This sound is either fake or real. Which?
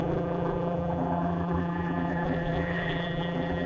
fake